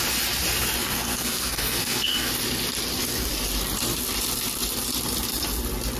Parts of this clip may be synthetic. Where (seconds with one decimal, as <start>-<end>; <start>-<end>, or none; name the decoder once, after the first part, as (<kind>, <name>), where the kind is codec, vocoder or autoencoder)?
0.8-2.3 (codec, SNAC)